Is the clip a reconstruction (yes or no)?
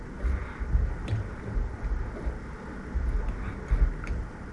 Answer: no